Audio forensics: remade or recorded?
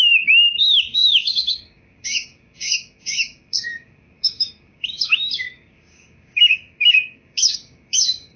remade